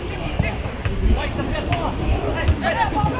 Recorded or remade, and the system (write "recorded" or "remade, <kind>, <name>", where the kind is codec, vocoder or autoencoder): remade, vocoder, BigVGAN v2